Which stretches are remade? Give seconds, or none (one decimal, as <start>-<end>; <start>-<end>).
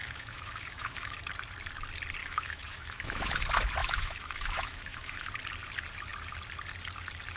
0.0-1.2; 2.2-3.4; 3.8-5.3